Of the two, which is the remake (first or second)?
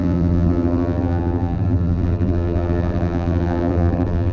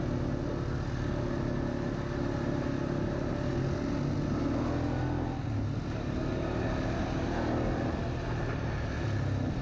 first